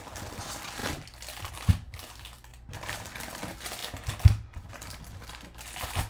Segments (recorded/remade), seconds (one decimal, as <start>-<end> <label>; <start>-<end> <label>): 0.0-2.5 recorded; 2.5-3.1 remade; 3.1-6.1 recorded